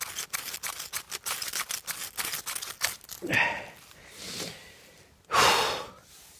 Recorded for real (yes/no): yes